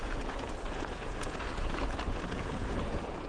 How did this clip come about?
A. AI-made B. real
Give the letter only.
A